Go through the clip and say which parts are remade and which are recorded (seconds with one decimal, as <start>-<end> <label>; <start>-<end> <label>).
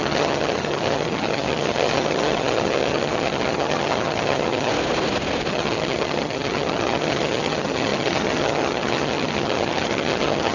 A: 0.0-4.7 remade; 4.7-5.5 recorded; 5.5-10.5 remade